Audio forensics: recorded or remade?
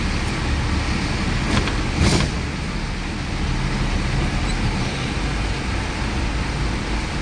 recorded